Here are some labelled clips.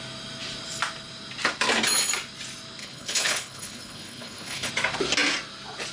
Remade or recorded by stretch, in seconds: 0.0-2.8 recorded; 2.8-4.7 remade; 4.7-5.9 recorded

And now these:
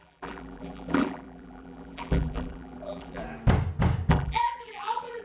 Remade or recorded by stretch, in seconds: 0.0-3.2 remade; 3.2-4.1 recorded; 4.1-5.2 remade

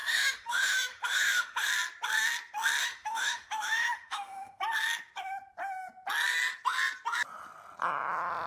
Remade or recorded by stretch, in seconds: 0.0-1.7 remade; 1.7-2.8 recorded; 2.8-4.6 remade; 4.6-8.5 recorded

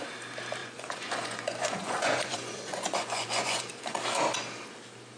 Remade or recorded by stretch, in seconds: 0.0-0.6 recorded; 0.6-3.7 remade; 3.7-5.2 recorded

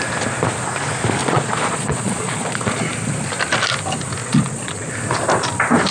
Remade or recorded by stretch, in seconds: 0.0-1.2 recorded; 1.2-2.9 remade; 2.9-4.2 recorded; 4.2-4.9 remade; 4.9-5.9 recorded

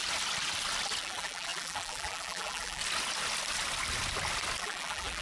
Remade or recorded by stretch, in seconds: 0.0-1.0 recorded; 1.0-2.8 remade; 2.8-4.6 recorded; 4.6-5.2 remade

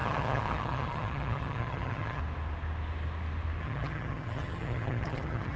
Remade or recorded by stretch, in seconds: 0.0-2.2 remade; 2.2-3.6 recorded; 3.6-5.6 remade

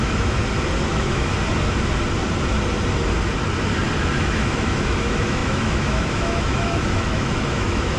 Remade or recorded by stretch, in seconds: 0.0-0.4 remade; 0.4-0.9 recorded; 0.9-1.3 remade; 1.3-4.2 recorded; 4.2-8.0 remade